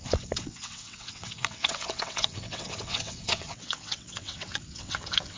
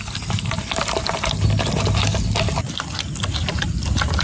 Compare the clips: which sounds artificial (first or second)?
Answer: first